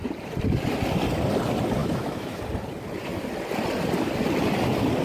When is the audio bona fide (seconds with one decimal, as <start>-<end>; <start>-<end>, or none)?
0.0-1.8; 2.4-5.0